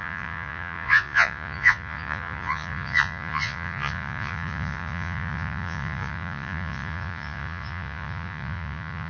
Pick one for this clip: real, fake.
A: fake